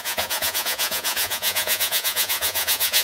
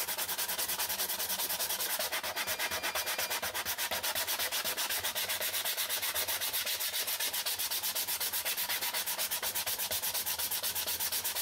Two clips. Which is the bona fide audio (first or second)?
second